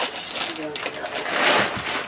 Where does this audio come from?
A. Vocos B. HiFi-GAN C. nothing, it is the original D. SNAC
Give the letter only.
C